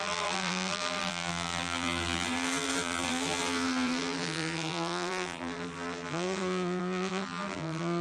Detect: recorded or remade remade